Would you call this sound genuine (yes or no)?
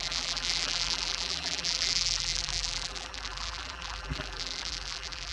no